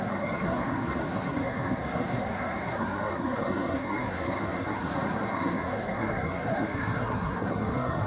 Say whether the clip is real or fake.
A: fake